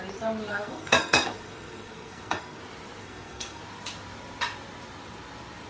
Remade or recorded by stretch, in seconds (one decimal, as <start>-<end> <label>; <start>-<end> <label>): 0.0-0.5 recorded; 0.5-2.6 remade; 2.6-3.0 recorded; 3.0-3.6 remade; 3.6-5.7 recorded